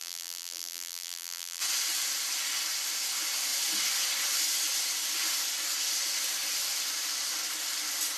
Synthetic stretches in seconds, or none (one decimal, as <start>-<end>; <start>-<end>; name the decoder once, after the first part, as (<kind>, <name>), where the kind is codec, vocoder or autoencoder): 0.0-1.6 (vocoder, BigVGAN v2)